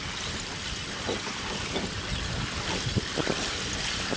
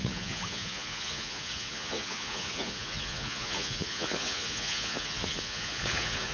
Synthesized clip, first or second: second